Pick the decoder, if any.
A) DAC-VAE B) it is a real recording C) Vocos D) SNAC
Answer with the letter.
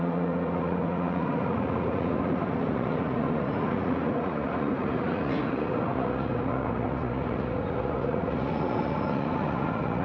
C